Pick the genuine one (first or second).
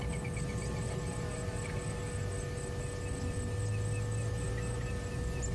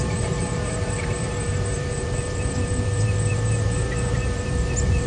first